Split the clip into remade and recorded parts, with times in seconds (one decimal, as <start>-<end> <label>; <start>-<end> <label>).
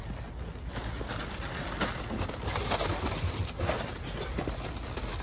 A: 0.0-5.2 recorded